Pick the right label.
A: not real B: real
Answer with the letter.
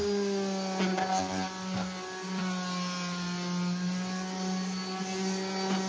B